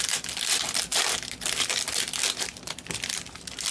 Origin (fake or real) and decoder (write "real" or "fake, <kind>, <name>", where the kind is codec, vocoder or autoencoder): real